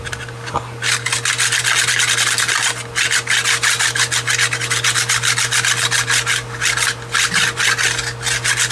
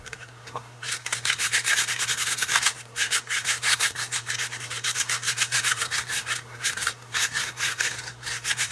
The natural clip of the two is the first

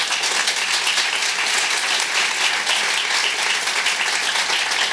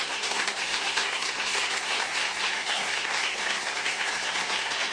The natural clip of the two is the first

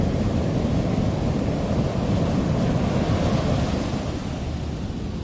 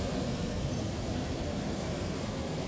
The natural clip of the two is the first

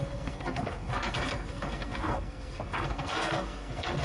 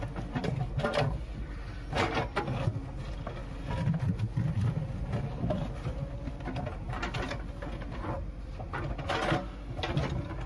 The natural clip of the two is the second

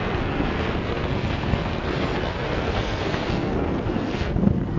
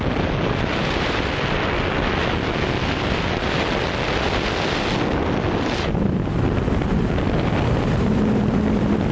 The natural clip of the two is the second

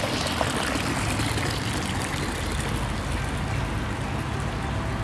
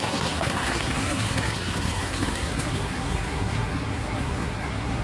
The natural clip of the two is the first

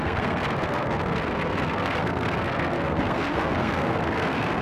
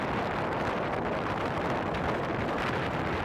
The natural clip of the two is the second